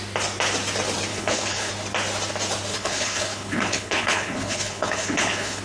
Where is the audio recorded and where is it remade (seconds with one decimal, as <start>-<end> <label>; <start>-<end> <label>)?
0.0-1.1 recorded; 1.1-1.7 remade; 1.7-2.7 recorded; 2.7-5.6 remade